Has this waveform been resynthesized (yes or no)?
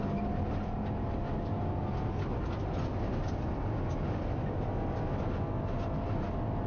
no